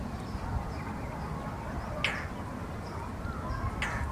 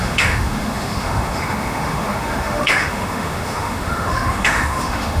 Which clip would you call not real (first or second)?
second